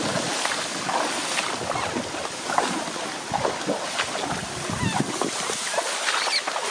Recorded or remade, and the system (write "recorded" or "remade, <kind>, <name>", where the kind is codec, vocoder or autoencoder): recorded